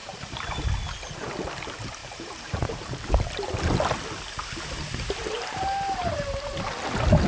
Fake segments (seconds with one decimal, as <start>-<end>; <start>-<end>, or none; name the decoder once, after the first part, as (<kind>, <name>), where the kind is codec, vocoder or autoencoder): 0.0-0.6 (vocoder, BigVGAN v2); 2.0-3.6; 5.2-6.5